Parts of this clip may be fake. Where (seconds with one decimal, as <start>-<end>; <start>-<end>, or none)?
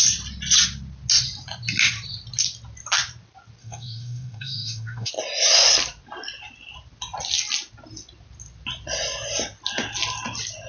3.6-5.1